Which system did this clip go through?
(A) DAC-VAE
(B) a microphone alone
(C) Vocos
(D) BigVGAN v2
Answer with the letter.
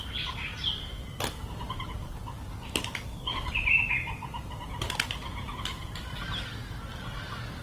B